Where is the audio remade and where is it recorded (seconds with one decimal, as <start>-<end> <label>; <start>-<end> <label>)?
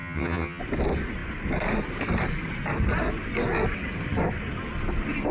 0.0-0.6 remade; 0.6-5.3 recorded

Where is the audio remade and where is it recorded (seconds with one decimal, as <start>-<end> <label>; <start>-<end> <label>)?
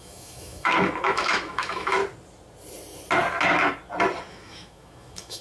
0.0-2.0 remade; 2.0-4.3 recorded; 4.3-5.4 remade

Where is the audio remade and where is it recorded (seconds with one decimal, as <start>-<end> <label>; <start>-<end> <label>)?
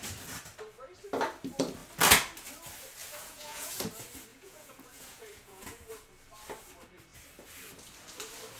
0.0-3.0 recorded; 3.0-3.8 remade; 3.8-4.3 recorded; 4.3-5.9 remade; 5.9-8.6 recorded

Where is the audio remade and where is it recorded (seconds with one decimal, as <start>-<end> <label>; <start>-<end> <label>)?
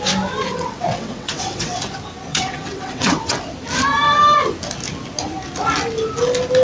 0.0-0.4 recorded; 0.4-1.8 remade; 1.8-2.3 recorded; 2.3-3.4 remade; 3.4-6.6 recorded